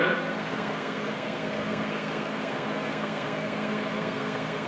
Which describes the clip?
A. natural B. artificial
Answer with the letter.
B